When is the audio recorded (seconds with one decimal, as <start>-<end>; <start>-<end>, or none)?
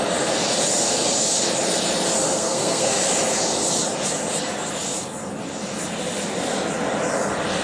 0.0-2.3; 2.9-7.6